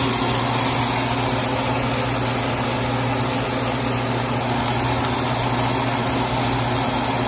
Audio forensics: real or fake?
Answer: real